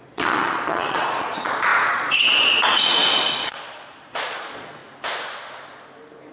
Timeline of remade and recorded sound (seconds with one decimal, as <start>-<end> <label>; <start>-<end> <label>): 0.0-4.8 remade; 4.8-6.3 recorded